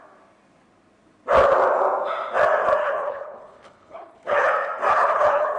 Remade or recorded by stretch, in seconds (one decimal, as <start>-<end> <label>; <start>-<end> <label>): 0.0-2.8 recorded; 2.8-4.5 remade; 4.5-4.9 recorded; 4.9-5.6 remade